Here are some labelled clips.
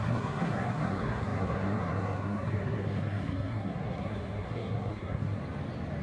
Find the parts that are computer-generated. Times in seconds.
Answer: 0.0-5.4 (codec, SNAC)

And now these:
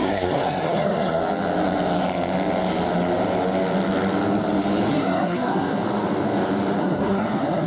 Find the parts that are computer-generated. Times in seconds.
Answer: 0.0-1.2 (codec, SNAC); 4.9-5.8; 6.8-7.7